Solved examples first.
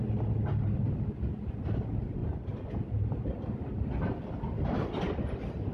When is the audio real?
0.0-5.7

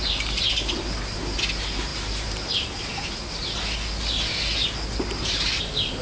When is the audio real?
0.0-1.9; 3.1-5.1

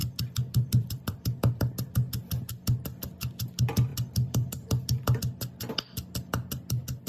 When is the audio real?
1.9-3.9; 5.2-7.1

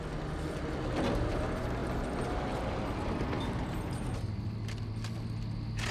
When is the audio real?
0.0-5.9

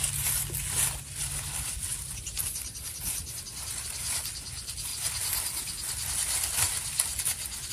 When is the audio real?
0.0-1.9; 3.4-7.7